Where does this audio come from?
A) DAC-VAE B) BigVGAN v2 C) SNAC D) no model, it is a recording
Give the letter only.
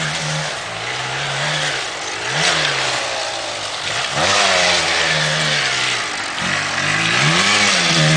D